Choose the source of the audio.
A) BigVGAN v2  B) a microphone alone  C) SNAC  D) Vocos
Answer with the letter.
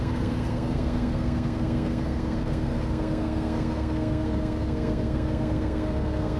C